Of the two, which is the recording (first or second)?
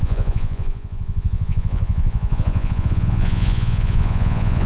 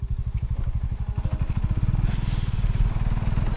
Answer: second